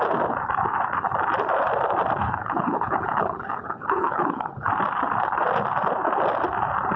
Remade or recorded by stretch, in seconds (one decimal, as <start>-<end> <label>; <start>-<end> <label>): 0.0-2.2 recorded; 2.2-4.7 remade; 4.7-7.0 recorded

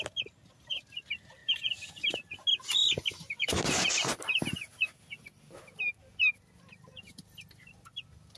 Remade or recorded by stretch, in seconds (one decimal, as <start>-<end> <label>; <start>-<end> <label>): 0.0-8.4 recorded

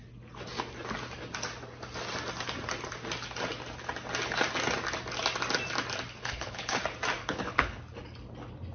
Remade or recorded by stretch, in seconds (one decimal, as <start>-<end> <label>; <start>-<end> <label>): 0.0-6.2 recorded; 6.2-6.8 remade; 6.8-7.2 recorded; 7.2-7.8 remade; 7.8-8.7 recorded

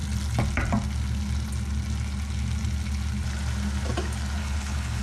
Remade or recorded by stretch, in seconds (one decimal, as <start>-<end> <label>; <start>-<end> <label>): 0.0-4.4 recorded; 4.4-5.0 remade

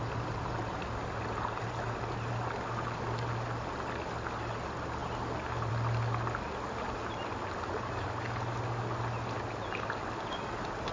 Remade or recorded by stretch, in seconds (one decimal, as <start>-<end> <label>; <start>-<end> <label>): 0.0-10.9 recorded